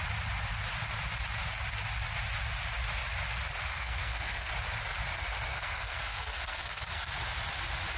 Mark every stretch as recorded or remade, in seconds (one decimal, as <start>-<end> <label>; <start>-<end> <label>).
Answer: 0.0-3.7 recorded; 3.7-4.5 remade; 4.5-5.5 recorded; 5.5-7.1 remade; 7.1-8.0 recorded